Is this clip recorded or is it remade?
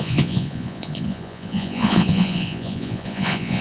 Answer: remade